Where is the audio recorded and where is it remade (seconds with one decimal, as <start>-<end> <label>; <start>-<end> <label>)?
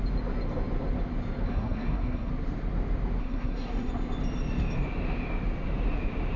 0.0-1.5 recorded; 1.5-2.3 remade; 2.3-3.2 recorded; 3.2-3.9 remade; 3.9-6.4 recorded